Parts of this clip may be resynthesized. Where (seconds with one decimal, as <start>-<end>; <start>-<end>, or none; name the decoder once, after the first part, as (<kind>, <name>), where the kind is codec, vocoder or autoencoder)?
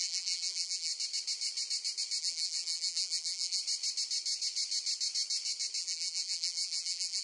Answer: 0.0-0.9 (vocoder, BigVGAN v2); 2.2-3.6; 5.8-7.2